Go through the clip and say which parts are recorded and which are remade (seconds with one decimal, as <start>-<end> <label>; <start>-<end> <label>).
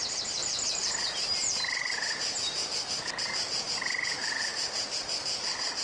0.0-0.4 recorded; 0.4-2.7 remade; 2.7-4.2 recorded; 4.2-5.0 remade; 5.0-5.8 recorded